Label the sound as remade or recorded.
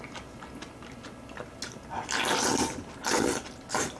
recorded